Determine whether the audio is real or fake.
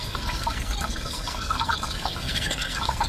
fake